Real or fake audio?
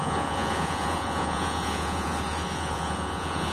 fake